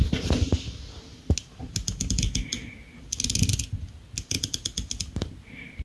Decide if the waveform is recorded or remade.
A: recorded